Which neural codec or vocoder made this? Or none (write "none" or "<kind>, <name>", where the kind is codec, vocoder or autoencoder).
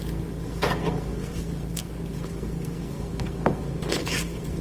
codec, SNAC